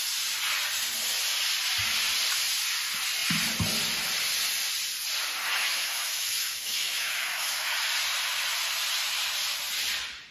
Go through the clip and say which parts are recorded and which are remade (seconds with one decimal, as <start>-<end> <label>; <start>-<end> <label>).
0.0-5.6 recorded; 5.6-7.7 remade; 7.7-10.3 recorded